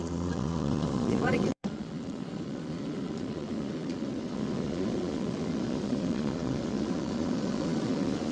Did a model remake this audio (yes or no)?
yes